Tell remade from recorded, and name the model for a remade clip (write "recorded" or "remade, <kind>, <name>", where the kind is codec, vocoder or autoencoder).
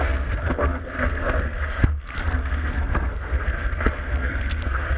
remade, codec, SNAC